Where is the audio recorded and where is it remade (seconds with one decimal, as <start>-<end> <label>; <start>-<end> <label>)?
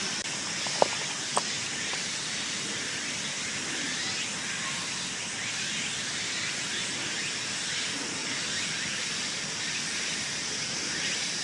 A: 0.0-11.4 recorded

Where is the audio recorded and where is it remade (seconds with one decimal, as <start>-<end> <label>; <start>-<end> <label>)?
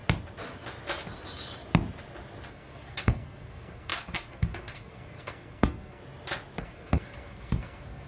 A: 0.0-2.5 recorded; 2.5-6.0 remade; 6.0-6.6 recorded; 6.6-8.1 remade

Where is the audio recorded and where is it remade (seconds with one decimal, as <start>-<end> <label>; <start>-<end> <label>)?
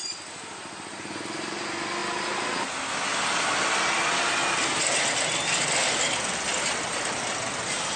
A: 0.0-8.0 recorded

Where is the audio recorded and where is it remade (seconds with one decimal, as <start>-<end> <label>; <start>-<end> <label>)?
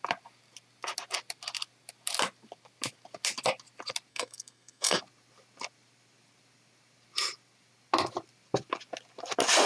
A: 0.0-4.1 recorded; 4.1-5.0 remade; 5.0-9.7 recorded